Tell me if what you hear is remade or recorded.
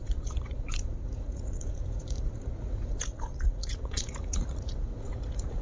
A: remade